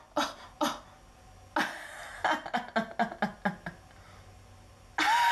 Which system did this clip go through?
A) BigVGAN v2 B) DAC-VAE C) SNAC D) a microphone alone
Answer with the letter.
D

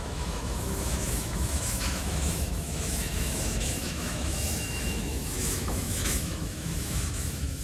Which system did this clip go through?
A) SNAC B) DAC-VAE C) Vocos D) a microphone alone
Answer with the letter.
B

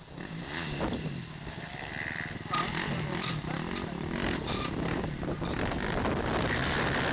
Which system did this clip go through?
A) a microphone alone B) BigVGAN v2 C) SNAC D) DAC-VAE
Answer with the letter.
A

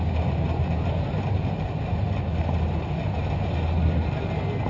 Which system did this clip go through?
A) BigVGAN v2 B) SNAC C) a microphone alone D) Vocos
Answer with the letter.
C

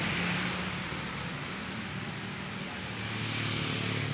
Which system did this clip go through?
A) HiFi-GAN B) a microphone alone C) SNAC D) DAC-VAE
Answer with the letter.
B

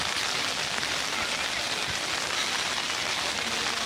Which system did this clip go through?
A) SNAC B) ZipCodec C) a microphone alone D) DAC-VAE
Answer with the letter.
C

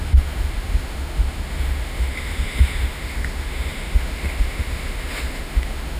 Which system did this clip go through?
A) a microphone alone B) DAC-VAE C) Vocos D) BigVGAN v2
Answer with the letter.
B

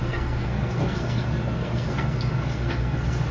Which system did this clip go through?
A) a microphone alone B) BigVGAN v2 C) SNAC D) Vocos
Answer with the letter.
C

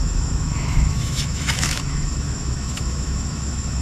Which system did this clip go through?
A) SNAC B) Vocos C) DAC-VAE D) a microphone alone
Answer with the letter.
C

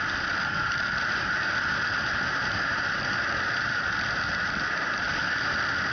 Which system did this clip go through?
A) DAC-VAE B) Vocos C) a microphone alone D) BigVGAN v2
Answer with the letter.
C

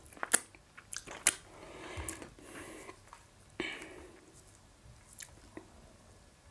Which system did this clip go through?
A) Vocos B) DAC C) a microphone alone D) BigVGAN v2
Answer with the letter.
C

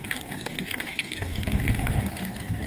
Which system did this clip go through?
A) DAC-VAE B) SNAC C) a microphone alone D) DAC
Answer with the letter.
D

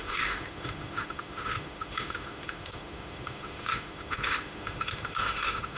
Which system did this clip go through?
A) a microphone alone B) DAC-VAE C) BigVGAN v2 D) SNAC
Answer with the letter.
B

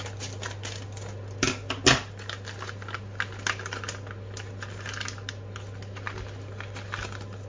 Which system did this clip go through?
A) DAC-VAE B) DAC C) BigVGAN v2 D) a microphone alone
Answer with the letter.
D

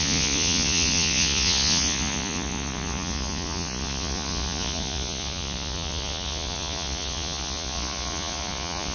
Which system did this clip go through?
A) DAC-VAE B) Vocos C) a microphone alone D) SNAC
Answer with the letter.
B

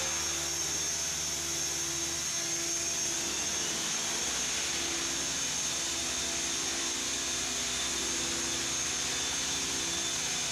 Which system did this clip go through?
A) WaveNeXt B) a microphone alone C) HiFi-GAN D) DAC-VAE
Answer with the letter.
B